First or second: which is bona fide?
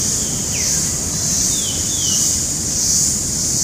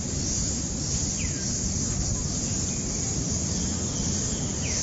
second